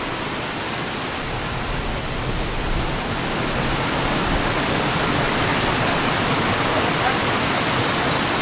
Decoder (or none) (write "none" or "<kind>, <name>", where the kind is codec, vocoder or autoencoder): none